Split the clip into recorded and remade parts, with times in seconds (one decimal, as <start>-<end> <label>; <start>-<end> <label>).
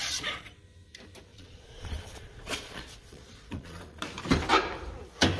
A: 0.0-0.5 remade; 0.5-1.3 recorded; 1.3-4.0 remade; 4.0-5.4 recorded